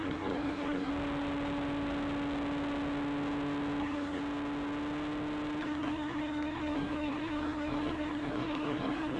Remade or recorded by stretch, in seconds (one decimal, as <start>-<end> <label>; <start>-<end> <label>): 0.0-0.9 remade; 0.9-3.8 recorded; 3.8-4.2 remade; 4.2-5.6 recorded; 5.6-9.2 remade